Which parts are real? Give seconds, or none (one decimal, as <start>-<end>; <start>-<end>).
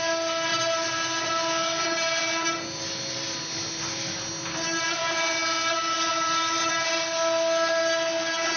0.0-6.1; 6.7-8.6